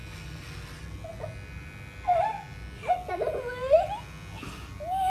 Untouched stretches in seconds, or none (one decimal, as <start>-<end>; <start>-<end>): 0.0-5.1